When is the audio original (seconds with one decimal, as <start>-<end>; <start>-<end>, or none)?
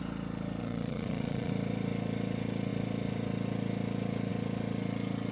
0.0-0.6; 1.5-5.3